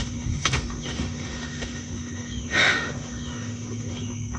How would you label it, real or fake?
fake